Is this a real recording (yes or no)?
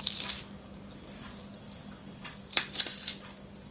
yes